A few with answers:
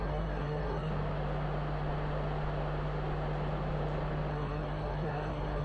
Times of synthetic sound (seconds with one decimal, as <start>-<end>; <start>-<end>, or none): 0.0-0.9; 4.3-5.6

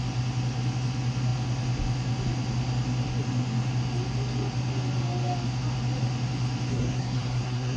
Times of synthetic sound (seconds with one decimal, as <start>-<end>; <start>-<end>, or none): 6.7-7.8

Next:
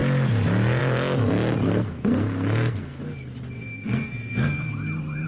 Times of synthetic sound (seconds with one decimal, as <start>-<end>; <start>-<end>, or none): 1.6-3.0; 3.6-4.7